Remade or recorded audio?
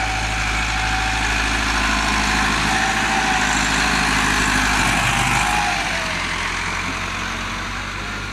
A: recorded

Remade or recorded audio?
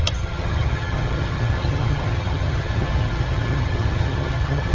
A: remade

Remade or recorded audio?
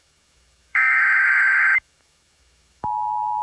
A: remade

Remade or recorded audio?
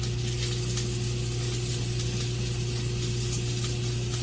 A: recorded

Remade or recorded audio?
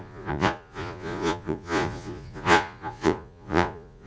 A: remade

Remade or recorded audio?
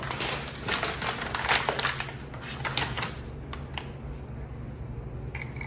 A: recorded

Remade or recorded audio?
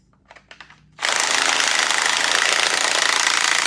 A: recorded